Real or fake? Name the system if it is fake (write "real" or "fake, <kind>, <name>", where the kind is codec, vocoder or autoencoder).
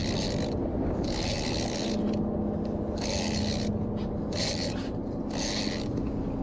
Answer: real